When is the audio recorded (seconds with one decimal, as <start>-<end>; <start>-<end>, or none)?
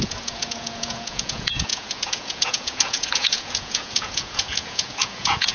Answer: none